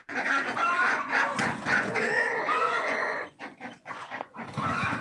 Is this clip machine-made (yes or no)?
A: yes